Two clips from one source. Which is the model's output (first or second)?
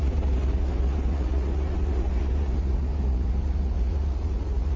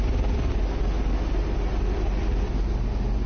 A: first